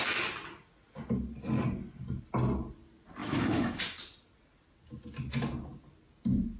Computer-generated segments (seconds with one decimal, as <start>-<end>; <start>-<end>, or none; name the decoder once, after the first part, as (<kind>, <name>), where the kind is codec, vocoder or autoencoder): 3.2-3.8 (autoencoder, DAC-VAE)